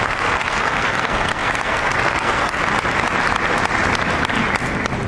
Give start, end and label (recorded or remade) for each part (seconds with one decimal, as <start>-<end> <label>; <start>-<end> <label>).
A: 0.0-2.6 remade; 2.6-5.1 recorded